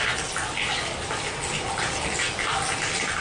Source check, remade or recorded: recorded